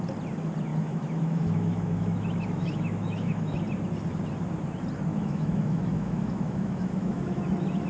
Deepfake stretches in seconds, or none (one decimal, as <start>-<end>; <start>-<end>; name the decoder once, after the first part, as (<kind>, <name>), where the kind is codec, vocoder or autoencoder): 0.7-3.6 (autoencoder, DAC-VAE); 5.1-7.4

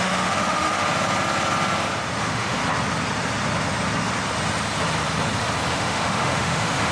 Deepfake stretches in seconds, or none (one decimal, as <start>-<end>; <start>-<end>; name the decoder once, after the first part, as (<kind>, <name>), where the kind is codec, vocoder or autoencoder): 0.0-0.9 (autoencoder, DAC-VAE); 2.2-2.6; 5.7-6.9

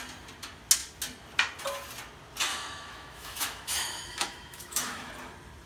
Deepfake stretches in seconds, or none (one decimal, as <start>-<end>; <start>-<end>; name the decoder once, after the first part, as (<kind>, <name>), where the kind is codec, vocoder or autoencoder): 2.5-5.1 (autoencoder, DAC-VAE)

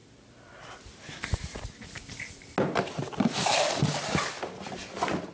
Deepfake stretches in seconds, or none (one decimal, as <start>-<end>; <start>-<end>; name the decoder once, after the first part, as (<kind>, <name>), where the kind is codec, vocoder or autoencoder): none